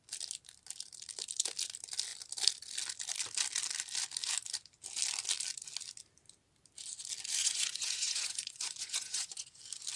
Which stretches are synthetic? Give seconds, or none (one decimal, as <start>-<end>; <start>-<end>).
7.4-9.6